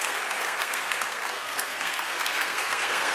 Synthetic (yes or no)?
yes